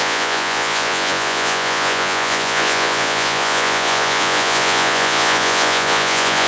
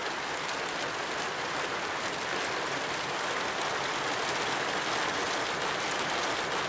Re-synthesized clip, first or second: first